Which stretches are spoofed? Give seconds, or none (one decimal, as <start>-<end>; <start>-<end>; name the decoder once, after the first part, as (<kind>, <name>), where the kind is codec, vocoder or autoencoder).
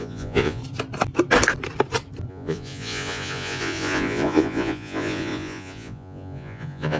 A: 0.0-0.6 (vocoder, Vocos); 2.3-7.0